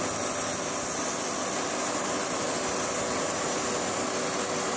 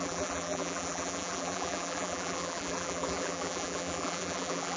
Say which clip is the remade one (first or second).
second